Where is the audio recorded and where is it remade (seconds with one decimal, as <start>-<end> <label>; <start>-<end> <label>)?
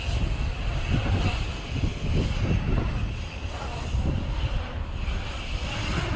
0.0-6.2 recorded